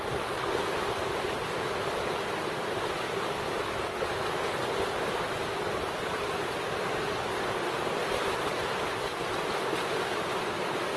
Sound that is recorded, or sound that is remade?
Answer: recorded